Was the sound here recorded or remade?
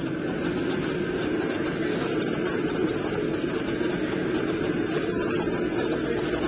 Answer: recorded